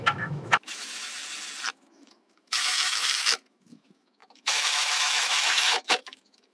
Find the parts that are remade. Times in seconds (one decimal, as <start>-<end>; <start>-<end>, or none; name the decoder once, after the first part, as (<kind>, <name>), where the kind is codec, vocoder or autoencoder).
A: 0.0-1.2 (autoencoder, DAC-VAE); 1.7-6.5